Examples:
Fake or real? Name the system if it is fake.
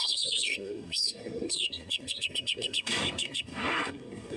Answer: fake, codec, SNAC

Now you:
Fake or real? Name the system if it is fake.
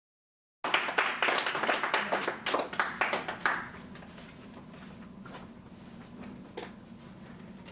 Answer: real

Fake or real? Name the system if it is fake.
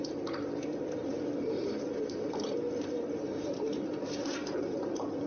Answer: fake, vocoder, BigVGAN v2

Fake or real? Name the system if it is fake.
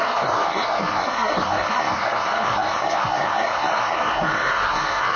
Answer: fake, codec, SNAC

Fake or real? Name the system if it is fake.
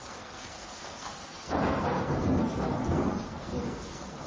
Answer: fake, codec, SNAC